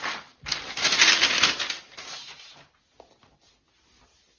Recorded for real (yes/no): yes